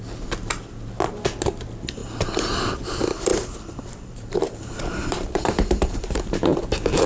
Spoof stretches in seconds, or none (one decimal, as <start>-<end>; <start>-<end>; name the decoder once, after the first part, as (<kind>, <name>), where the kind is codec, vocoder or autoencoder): 3.3-6.6 (vocoder, BigVGAN v2)